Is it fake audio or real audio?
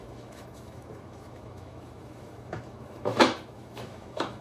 fake